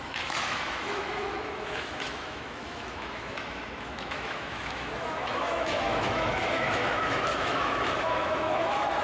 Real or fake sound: fake